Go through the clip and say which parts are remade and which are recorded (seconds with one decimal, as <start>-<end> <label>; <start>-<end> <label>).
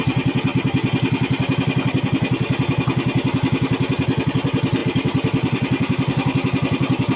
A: 0.0-0.5 remade; 0.5-4.3 recorded; 4.3-7.2 remade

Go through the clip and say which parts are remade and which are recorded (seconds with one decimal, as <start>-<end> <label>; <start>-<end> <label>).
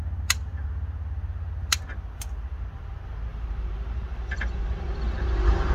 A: 0.0-3.3 recorded; 3.3-5.7 remade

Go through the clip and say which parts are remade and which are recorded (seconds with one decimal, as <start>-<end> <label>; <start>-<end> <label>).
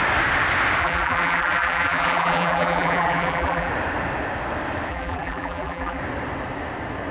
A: 0.0-0.8 recorded; 0.8-3.7 remade; 3.7-4.9 recorded; 4.9-6.0 remade; 6.0-7.1 recorded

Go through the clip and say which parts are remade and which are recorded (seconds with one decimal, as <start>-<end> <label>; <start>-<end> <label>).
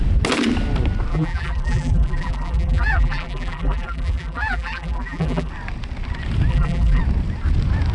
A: 0.0-1.1 recorded; 1.1-5.5 remade; 5.5-6.5 recorded; 6.5-7.0 remade; 7.0-7.9 recorded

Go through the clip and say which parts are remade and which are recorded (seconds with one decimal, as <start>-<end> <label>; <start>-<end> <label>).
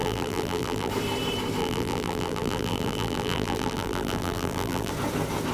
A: 0.0-0.9 remade; 0.9-1.6 recorded; 1.6-4.9 remade; 4.9-5.5 recorded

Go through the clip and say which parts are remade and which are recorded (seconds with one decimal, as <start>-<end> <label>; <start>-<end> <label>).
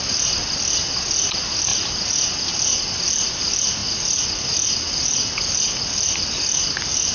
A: 0.0-7.1 recorded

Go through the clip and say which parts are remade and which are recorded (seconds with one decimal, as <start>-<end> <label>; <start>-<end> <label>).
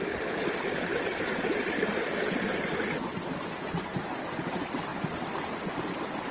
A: 0.0-6.3 recorded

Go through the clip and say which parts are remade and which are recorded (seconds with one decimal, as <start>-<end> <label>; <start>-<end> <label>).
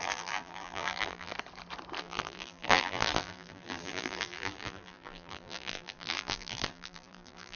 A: 0.0-1.3 remade; 1.3-2.0 recorded; 2.0-7.5 remade